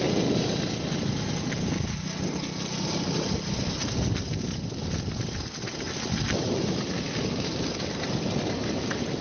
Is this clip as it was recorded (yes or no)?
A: yes